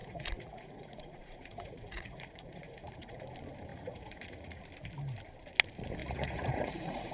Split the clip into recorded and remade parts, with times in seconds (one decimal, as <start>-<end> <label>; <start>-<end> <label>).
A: 0.0-3.2 remade; 3.2-3.7 recorded; 3.7-4.6 remade; 4.6-6.0 recorded; 6.0-7.1 remade